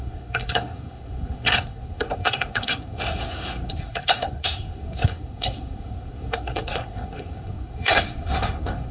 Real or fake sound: fake